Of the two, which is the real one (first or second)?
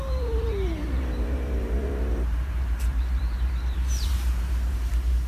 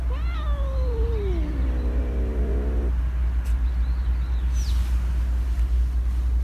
second